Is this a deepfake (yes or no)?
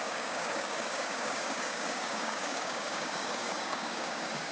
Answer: yes